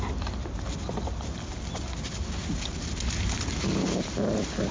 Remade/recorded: recorded